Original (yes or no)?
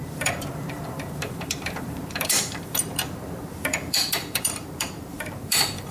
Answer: no